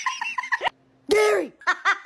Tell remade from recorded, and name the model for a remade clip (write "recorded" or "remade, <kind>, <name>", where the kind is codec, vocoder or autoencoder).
recorded